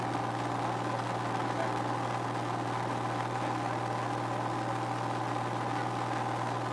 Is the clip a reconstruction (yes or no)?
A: no